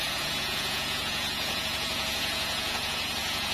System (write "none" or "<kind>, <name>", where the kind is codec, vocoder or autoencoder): vocoder, Vocos